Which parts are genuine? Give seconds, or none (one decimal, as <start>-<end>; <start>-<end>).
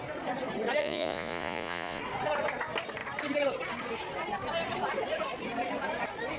0.0-0.8; 2.0-6.4